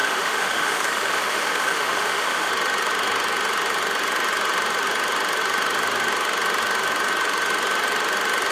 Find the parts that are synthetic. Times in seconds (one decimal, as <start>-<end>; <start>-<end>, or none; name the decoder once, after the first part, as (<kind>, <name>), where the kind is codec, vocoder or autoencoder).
0.0-2.5 (autoencoder, DAC-VAE)